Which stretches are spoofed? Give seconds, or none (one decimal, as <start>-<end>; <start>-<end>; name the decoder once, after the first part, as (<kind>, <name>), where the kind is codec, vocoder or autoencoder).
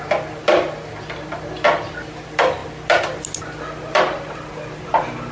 none